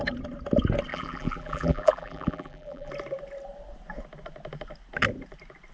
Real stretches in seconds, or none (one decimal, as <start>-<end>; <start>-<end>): 0.0-0.9; 2.9-5.7